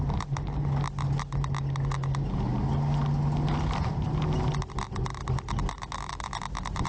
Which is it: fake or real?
real